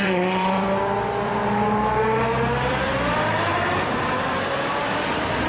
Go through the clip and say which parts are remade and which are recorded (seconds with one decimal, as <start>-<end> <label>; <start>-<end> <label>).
0.0-1.3 remade; 1.3-2.7 recorded; 2.7-5.5 remade